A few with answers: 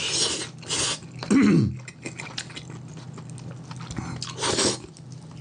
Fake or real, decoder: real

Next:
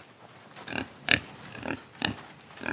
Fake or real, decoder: real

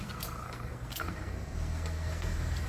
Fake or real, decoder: fake, codec, SNAC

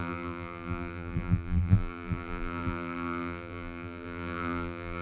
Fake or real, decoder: fake, vocoder, BigVGAN v2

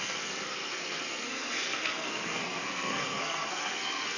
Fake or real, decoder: fake, codec, SNAC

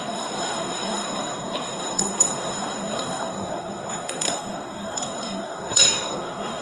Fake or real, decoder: fake, codec, SNAC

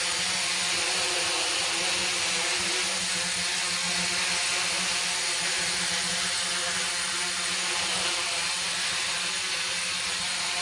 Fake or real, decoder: real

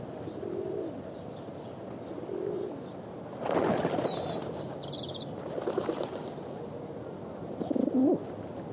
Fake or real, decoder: real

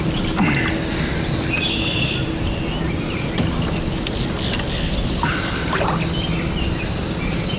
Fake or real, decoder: real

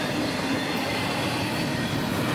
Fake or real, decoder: real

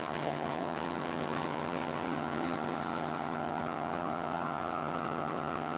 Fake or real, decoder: fake, vocoder, HiFi-GAN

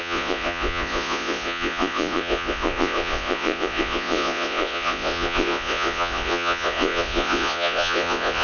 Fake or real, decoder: fake, vocoder, Vocos